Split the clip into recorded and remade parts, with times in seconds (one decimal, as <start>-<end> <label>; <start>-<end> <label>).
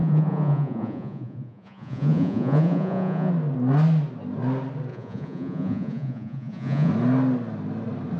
0.0-3.3 remade; 3.3-4.9 recorded; 4.9-6.9 remade; 6.9-8.2 recorded